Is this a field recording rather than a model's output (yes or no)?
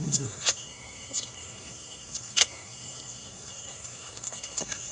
no